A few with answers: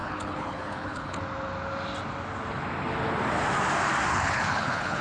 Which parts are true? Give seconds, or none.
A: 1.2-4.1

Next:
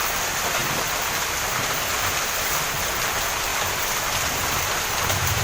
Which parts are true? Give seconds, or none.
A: 3.5-4.8